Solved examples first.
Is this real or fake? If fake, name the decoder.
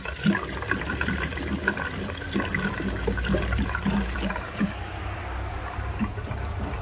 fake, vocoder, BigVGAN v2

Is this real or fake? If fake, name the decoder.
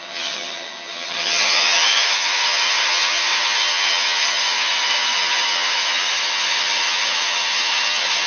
fake, vocoder, HiFi-GAN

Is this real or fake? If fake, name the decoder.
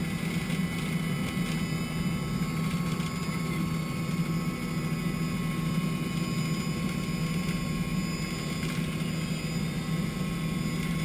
real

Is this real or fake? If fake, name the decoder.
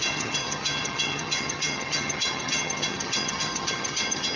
fake, vocoder, HiFi-GAN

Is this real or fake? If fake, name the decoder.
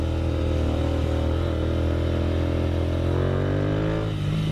real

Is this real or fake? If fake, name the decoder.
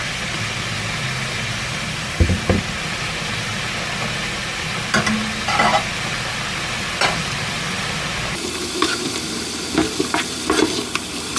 real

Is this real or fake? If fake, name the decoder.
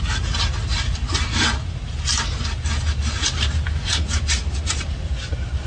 real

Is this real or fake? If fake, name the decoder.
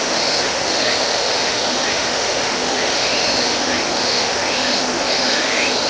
fake, autoencoder, DAC-VAE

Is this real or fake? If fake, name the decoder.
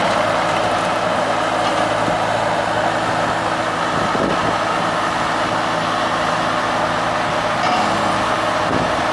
real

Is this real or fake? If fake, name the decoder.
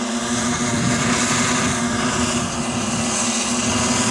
real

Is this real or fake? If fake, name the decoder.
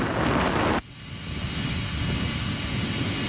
real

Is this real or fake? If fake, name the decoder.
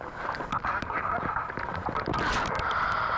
fake, vocoder, BigVGAN v2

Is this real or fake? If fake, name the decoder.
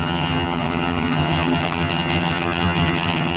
fake, vocoder, HiFi-GAN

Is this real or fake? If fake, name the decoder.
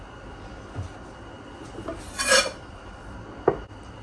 real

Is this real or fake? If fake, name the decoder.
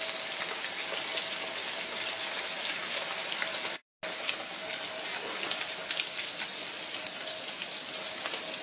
real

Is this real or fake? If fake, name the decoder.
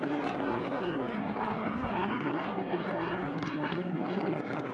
fake, codec, SNAC